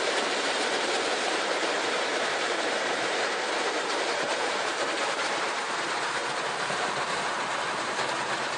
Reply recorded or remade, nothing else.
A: remade